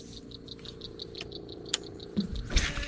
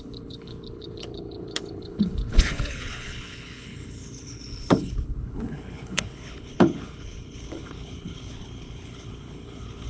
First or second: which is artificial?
second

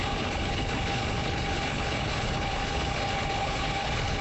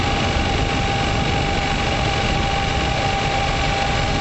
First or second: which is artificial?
first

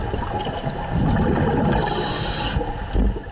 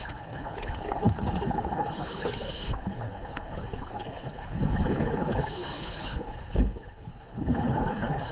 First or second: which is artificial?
second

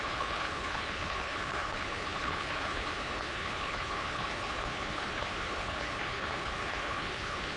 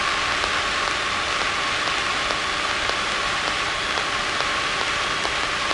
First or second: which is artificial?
first